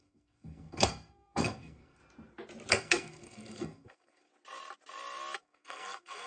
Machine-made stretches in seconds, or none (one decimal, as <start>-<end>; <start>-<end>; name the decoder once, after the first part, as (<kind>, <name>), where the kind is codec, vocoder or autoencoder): 0.0-2.0 (codec, SNAC); 2.7-4.3; 5.4-6.3